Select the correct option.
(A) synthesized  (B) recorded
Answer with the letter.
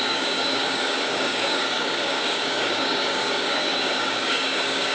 A